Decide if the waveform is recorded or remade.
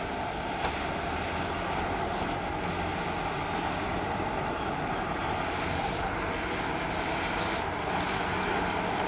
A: recorded